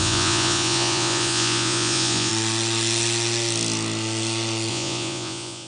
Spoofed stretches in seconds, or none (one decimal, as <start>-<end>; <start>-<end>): 0.0-2.3; 4.7-5.7

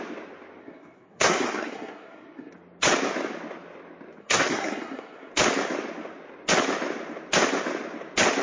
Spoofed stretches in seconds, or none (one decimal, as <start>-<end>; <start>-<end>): 0.6-2.5; 4.2-5.3

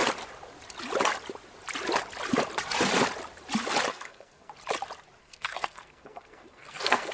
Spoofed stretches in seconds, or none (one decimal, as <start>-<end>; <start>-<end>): 3.9-4.5; 5.2-7.1

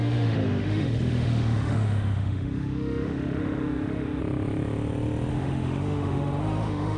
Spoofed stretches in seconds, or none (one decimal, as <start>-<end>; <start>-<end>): 0.0-4.2; 5.3-7.0

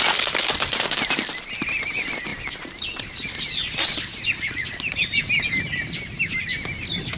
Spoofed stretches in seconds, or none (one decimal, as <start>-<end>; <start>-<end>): none

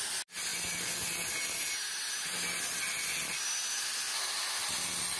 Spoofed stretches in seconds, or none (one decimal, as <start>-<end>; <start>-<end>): none